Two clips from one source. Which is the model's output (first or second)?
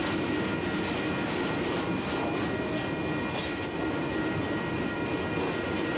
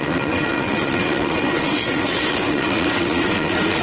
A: second